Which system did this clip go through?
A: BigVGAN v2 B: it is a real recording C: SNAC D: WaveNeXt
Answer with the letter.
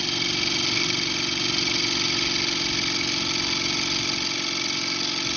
B